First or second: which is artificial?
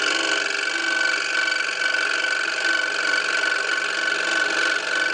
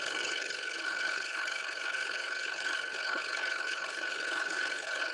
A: second